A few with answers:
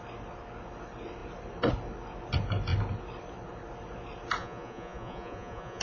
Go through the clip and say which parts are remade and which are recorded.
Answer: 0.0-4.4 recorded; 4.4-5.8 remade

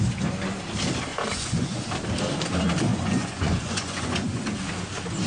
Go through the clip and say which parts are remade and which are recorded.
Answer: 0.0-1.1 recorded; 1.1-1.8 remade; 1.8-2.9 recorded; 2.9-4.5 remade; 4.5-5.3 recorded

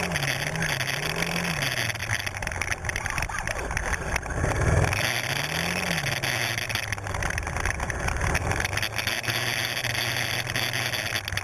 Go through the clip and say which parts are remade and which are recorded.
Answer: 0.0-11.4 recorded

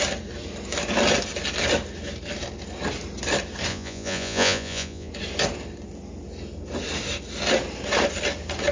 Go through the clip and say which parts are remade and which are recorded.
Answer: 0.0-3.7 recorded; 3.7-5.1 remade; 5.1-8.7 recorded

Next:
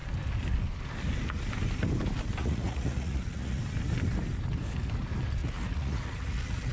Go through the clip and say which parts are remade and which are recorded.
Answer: 0.0-2.4 recorded; 2.4-3.6 remade; 3.6-5.4 recorded; 5.4-6.7 remade